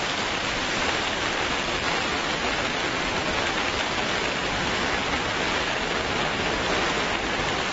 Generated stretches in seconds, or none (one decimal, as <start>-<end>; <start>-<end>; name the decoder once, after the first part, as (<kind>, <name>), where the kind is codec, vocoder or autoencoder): none

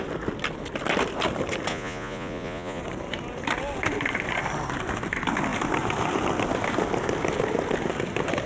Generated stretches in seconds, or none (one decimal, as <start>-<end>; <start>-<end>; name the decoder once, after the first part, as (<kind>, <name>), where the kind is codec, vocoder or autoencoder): 1.7-2.8 (vocoder, Vocos)

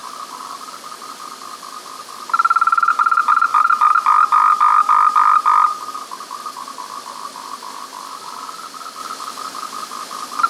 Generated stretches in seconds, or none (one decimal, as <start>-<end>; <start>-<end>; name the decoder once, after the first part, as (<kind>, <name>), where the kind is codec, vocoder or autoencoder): none

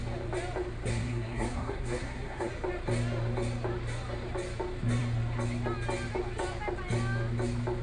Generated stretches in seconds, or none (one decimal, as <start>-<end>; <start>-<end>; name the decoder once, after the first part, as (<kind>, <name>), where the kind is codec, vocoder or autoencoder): 0.9-2.5 (codec, SNAC)

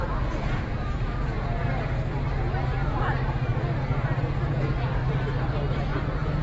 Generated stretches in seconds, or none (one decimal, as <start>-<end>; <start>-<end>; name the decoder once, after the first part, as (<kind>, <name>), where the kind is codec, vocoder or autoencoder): 0.0-1.6 (vocoder, Vocos); 2.9-3.5; 4.2-5.0; 5.8-6.4

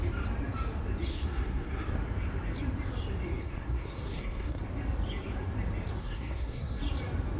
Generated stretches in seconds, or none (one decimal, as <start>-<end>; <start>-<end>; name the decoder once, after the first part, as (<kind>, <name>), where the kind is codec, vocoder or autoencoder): 1.1-1.8 (codec, SNAC); 3.4-4.6; 6.0-6.8

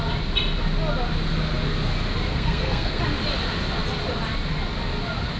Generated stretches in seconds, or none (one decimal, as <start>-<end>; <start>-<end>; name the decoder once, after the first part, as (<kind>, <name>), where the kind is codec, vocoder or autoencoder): 2.3-3.0 (codec, SNAC)